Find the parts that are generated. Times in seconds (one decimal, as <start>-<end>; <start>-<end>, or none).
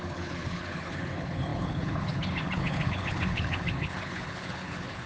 0.0-5.1